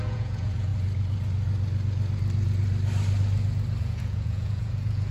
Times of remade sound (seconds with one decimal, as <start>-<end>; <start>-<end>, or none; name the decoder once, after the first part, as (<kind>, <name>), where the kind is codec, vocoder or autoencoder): 0.0-0.7 (vocoder, Vocos); 3.8-5.1